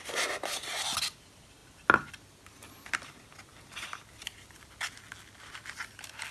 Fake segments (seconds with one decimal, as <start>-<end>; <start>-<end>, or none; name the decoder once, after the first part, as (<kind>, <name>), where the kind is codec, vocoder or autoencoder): none